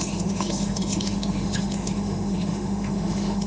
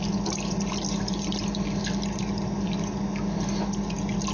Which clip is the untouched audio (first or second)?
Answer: second